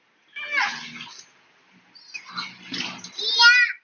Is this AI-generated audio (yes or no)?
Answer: no